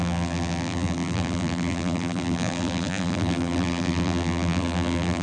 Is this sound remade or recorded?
remade